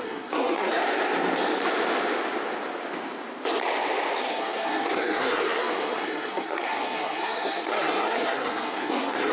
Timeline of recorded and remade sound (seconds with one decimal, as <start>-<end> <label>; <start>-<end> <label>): 0.0-0.8 remade; 0.8-4.2 recorded; 4.2-9.3 remade